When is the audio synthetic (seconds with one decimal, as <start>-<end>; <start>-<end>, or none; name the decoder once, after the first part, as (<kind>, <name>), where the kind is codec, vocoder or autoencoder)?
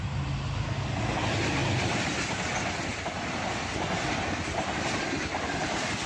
1.6-2.4 (vocoder, BigVGAN v2); 2.9-6.1